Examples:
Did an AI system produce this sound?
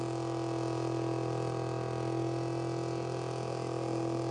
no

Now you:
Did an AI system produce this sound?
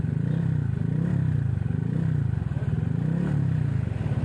no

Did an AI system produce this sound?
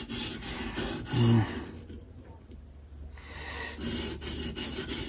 no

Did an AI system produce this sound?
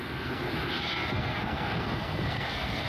yes